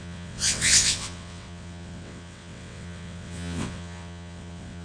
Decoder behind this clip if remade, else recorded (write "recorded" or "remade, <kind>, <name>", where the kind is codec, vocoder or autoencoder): remade, vocoder, WaveNeXt